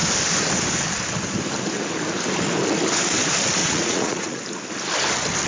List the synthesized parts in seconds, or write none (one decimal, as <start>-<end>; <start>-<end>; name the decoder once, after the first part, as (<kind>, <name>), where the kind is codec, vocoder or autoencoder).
3.6-4.4 (vocoder, Vocos)